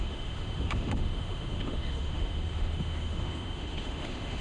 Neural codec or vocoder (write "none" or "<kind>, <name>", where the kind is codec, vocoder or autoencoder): autoencoder, DAC-VAE